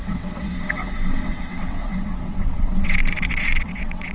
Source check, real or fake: fake